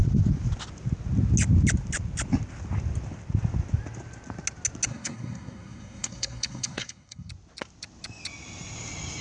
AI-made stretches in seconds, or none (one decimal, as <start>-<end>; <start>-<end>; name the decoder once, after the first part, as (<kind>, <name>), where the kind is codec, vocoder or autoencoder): 4.9-7.3 (codec, SNAC)